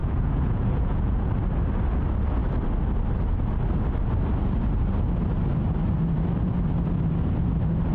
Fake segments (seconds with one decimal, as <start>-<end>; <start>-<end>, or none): 0.0-1.3